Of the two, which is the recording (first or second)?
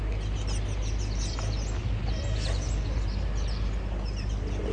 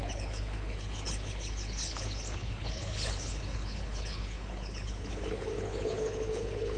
first